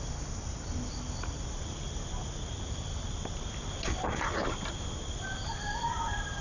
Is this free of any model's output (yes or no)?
yes